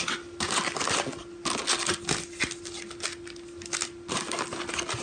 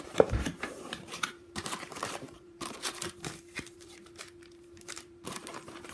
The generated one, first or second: second